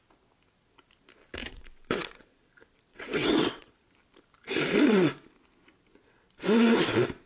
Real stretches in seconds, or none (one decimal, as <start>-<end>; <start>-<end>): 0.0-1.4; 2.4-2.9; 3.7-7.3